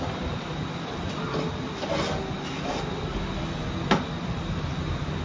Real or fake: real